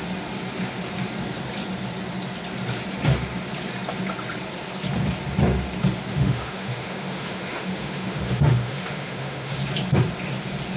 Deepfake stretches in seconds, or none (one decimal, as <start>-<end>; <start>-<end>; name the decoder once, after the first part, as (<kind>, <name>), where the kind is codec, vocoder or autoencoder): 6.1-9.6 (autoencoder, DAC-VAE)